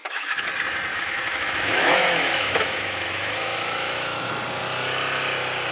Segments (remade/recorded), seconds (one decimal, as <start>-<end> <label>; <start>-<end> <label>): 0.0-0.5 remade; 0.5-0.9 recorded; 0.9-4.3 remade; 4.3-5.7 recorded